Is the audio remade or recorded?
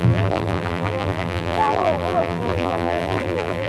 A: remade